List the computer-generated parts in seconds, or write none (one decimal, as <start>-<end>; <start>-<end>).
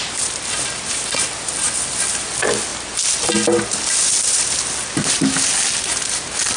none